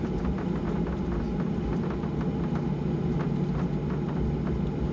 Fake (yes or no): no